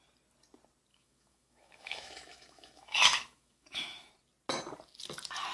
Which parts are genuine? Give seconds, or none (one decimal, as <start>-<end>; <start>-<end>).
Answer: 0.0-0.9; 4.1-5.5